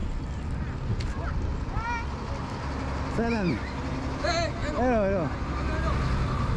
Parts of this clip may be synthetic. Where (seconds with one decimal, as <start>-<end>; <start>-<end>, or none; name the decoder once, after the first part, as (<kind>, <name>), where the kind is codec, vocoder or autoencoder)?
none